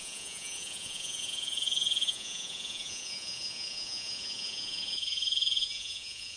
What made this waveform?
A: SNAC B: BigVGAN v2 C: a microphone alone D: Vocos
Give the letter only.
D